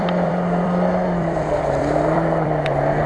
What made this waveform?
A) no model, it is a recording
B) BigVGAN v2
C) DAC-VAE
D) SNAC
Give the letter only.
B